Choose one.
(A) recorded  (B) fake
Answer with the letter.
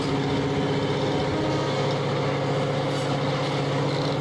A